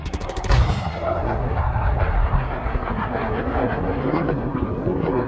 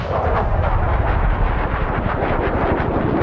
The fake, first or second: first